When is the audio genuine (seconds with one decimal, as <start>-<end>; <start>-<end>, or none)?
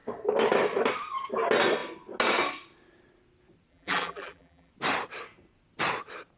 0.0-3.7; 4.7-6.4